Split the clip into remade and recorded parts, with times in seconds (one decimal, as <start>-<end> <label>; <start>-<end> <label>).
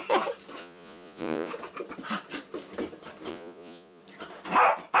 0.0-0.6 recorded; 0.6-1.5 remade; 1.5-3.3 recorded; 3.3-4.0 remade; 4.0-5.0 recorded